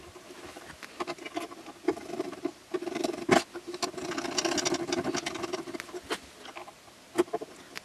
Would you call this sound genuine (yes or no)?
yes